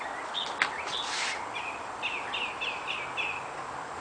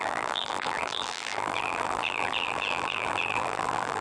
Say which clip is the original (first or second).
first